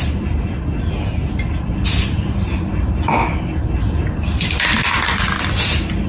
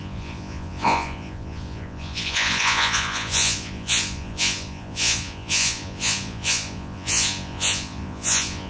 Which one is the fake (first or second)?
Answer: second